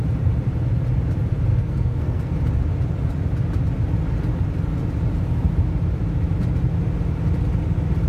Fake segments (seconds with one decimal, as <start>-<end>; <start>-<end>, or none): 1.5-2.3